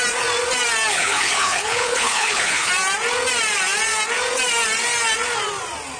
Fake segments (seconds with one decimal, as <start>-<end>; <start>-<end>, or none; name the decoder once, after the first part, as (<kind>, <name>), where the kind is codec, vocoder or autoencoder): 0.9-2.7 (codec, HILCodec)